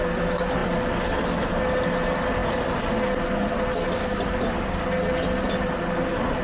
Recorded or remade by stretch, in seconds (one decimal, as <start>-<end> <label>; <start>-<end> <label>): 0.0-6.4 recorded